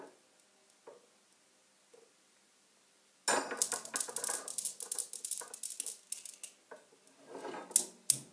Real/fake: real